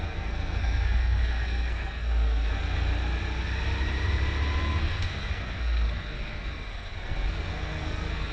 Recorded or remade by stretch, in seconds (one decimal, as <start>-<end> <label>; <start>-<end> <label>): 0.0-2.9 remade; 2.9-4.6 recorded; 4.6-8.3 remade